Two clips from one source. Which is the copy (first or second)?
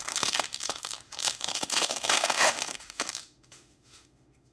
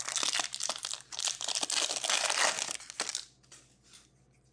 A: first